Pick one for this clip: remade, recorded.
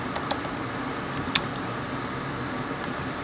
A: recorded